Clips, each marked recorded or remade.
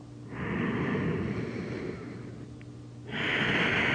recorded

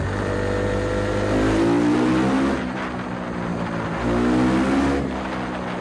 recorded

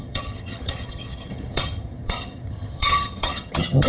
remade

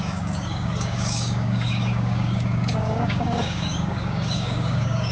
remade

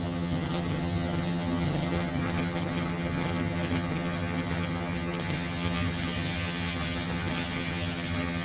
remade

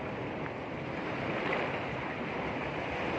recorded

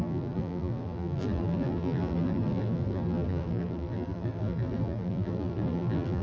remade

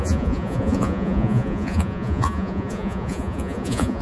remade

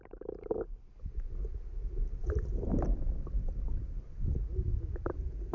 recorded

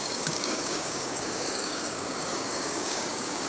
remade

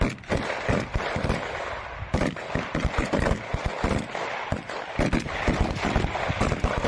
recorded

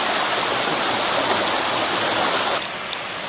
recorded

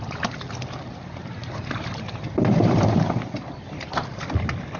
recorded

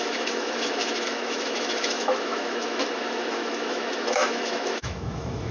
remade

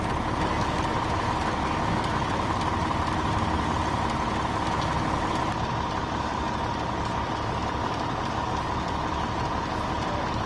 recorded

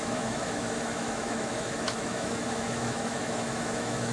remade